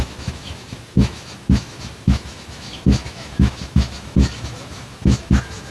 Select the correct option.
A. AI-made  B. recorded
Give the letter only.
A